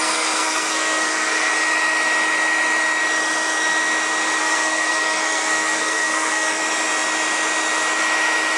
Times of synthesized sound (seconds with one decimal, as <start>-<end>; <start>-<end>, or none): 0.0-1.5; 4.4-6.6